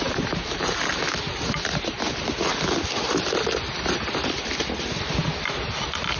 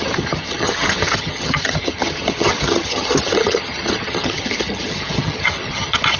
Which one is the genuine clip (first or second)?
first